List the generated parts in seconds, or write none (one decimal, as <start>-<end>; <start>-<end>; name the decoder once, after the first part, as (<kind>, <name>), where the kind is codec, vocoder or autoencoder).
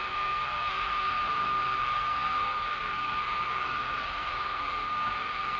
0.0-5.6 (codec, SNAC)